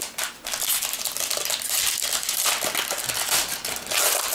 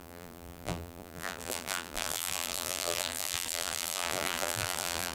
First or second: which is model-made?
second